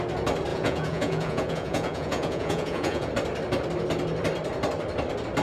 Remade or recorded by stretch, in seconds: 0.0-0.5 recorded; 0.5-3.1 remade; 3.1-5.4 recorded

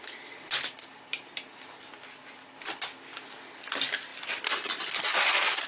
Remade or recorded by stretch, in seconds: 0.0-5.7 recorded

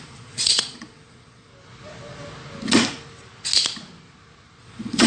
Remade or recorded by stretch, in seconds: 0.0-1.5 remade; 1.5-4.6 recorded; 4.6-5.1 remade